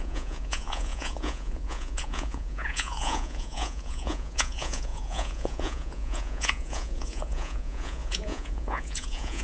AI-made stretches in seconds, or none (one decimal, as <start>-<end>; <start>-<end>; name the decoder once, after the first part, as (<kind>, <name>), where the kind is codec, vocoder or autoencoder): 0.0-9.4 (vocoder, Vocos)